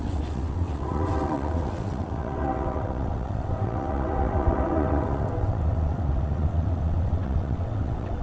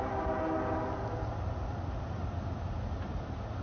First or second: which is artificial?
first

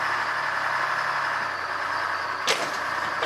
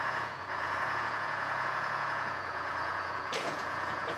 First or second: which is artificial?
second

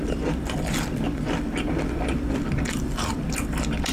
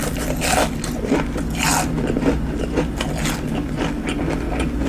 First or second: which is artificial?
first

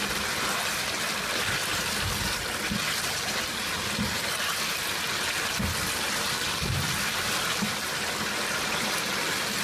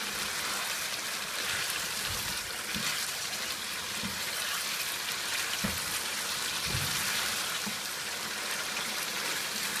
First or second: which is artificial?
second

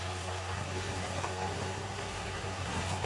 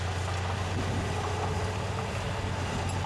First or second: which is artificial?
first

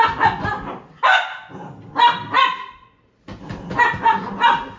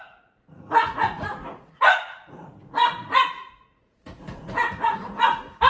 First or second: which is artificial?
second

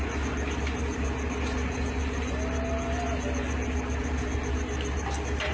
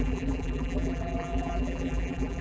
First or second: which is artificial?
second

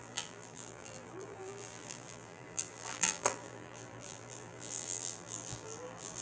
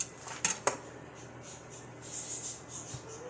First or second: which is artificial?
first